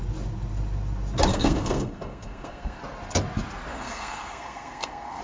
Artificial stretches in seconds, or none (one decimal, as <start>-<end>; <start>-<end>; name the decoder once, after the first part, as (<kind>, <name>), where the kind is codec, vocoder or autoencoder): 1.3-2.8 (codec, SNAC); 3.7-5.2